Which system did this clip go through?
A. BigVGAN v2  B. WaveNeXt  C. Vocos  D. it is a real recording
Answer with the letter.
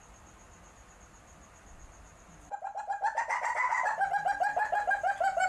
D